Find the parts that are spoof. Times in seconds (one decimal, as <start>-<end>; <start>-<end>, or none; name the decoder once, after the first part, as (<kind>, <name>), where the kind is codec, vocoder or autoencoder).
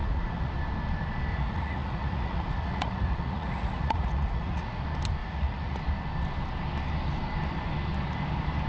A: 0.0-0.5 (vocoder, Vocos); 1.3-4.8; 5.2-5.8